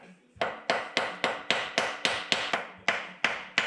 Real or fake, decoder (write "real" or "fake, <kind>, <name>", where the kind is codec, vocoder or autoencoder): real